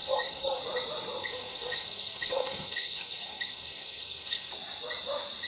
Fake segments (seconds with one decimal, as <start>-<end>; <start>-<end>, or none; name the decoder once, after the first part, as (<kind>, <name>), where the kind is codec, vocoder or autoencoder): 0.0-0.6 (codec, SNAC); 1.2-4.5